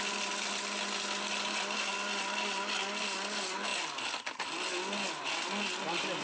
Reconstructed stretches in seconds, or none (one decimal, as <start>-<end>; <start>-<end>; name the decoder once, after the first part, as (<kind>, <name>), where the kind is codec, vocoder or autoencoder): none